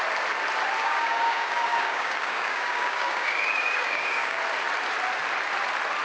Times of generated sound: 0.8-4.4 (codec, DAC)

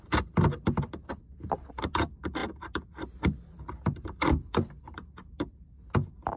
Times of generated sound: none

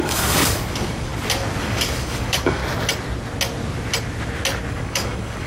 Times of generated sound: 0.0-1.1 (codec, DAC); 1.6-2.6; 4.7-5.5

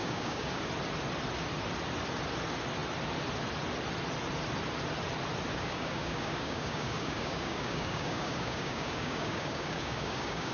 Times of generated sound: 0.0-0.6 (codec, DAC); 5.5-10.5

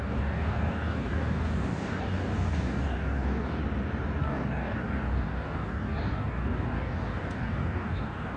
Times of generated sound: 0.0-3.6 (codec, DAC); 4.2-8.4

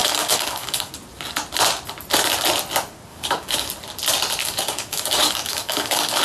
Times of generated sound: 0.0-0.9 (codec, DAC); 3.1-3.7; 4.4-6.2

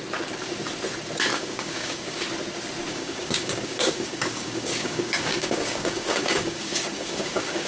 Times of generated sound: 1.3-2.2 (codec, DAC); 2.9-7.7

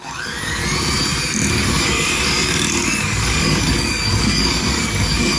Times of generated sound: 0.0-0.6 (codec, DAC); 1.5-5.4